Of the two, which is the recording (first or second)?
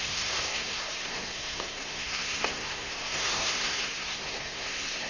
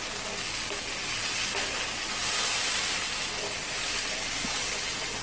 second